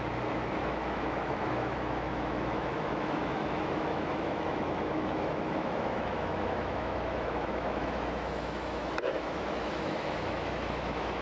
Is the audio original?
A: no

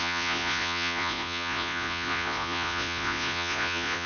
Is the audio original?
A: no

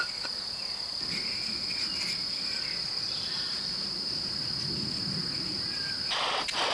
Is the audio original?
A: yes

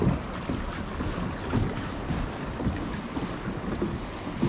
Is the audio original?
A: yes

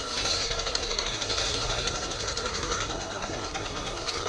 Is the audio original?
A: no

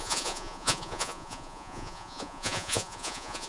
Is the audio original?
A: no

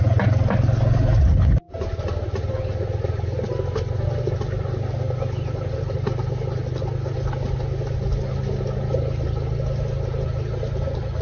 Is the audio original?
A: yes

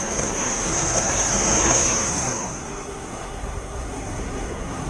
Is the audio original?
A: no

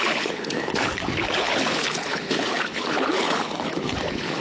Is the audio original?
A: no